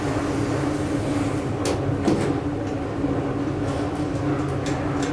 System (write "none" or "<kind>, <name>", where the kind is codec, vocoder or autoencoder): none